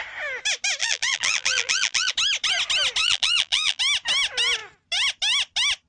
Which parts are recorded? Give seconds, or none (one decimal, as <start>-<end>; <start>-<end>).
0.0-0.8; 2.1-3.0; 3.8-5.9